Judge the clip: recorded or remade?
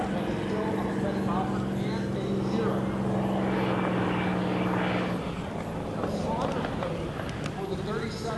recorded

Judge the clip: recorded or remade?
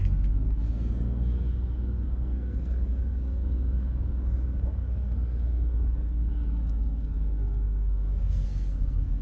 remade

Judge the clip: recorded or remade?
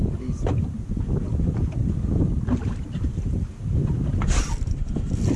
recorded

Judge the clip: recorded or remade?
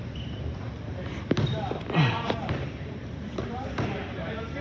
remade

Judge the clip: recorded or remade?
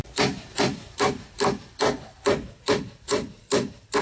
remade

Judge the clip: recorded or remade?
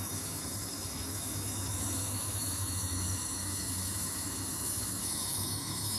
remade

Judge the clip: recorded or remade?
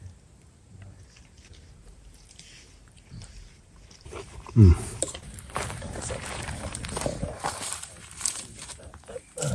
remade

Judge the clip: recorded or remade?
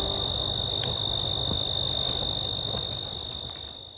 recorded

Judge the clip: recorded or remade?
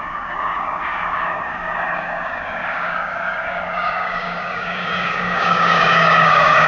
remade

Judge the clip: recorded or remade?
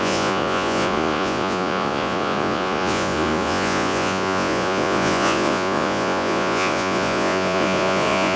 remade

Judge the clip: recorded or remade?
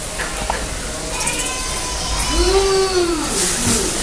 recorded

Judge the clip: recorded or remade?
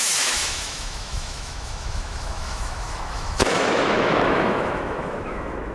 remade